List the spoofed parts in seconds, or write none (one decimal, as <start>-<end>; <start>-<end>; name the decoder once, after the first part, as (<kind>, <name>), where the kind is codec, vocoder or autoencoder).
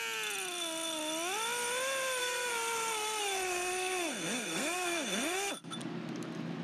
2.2-5.5 (codec, SNAC)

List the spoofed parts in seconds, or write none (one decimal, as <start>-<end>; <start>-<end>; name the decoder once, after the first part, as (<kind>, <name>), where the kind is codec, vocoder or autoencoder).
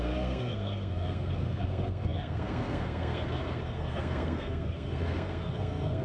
0.0-6.0 (codec, SNAC)